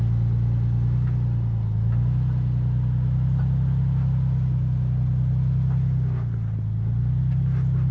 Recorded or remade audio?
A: recorded